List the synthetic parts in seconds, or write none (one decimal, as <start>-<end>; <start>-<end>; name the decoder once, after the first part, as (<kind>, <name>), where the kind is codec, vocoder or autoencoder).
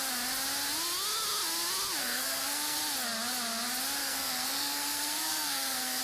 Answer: 2.0-2.8 (codec, SNAC); 4.0-6.0